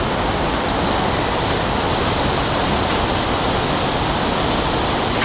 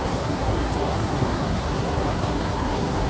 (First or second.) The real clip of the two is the first